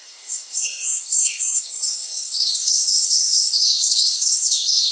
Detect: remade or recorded remade